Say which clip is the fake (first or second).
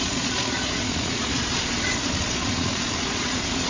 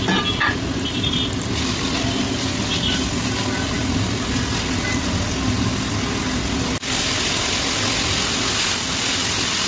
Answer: first